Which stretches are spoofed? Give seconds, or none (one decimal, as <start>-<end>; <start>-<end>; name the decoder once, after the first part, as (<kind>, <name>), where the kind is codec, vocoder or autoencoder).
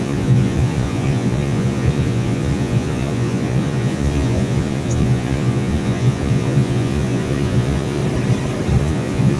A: 0.0-8.0 (vocoder, Vocos); 8.8-9.4